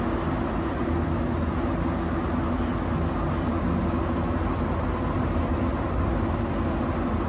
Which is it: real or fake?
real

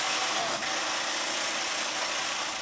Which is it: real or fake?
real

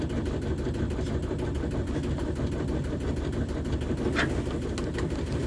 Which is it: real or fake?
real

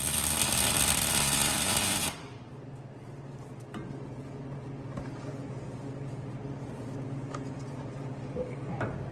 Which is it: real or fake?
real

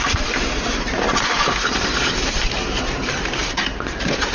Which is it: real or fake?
fake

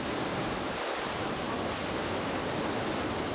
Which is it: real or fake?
real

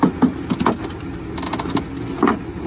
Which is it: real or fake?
real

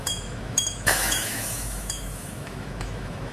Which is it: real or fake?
fake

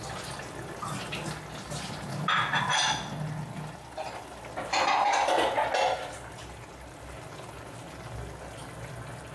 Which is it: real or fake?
real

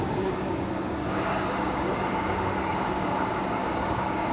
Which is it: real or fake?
fake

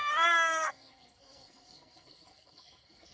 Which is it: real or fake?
fake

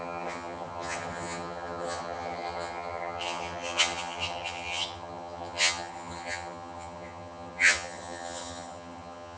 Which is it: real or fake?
fake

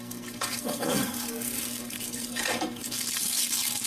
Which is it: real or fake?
fake